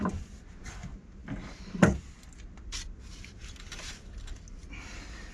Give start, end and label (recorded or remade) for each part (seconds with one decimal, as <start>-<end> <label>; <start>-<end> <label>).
0.0-5.3 recorded